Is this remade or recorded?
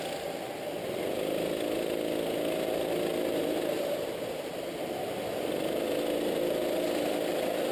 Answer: recorded